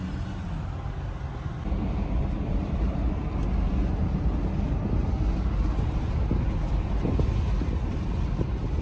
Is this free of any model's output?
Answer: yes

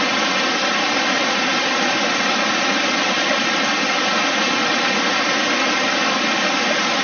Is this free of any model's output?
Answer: yes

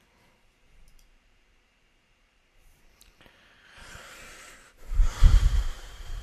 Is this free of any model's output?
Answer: no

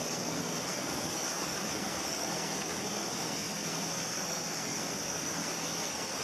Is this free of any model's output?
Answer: no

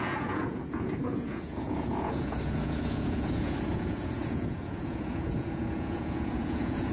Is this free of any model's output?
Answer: no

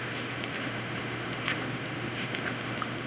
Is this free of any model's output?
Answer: no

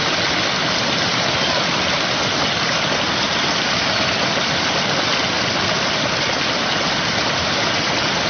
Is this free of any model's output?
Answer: yes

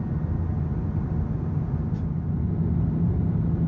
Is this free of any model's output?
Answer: yes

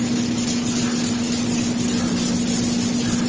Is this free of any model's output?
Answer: yes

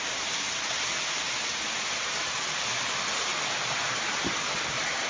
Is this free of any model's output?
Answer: yes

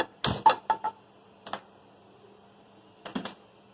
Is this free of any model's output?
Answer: yes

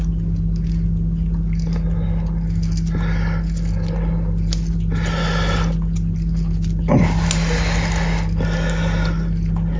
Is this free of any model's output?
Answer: yes